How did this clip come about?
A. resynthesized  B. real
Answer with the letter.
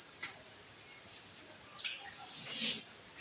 B